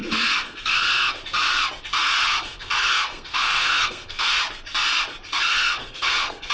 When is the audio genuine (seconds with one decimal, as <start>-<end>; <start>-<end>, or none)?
1.2-2.0; 4.4-5.5